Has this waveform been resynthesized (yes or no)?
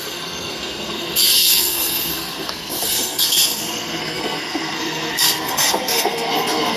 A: yes